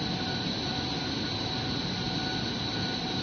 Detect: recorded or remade recorded